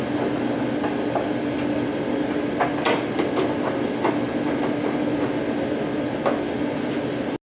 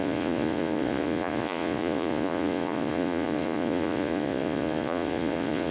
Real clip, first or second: first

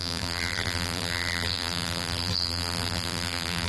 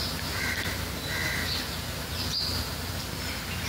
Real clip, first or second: second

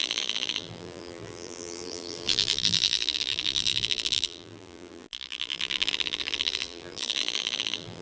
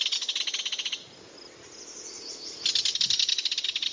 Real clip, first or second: second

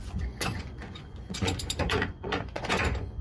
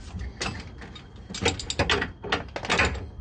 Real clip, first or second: second